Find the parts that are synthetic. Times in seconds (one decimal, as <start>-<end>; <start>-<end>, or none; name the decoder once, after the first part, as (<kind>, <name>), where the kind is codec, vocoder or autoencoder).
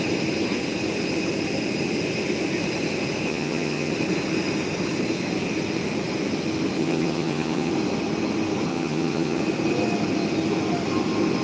3.3-3.9 (vocoder, HiFi-GAN); 6.8-7.7; 8.7-9.4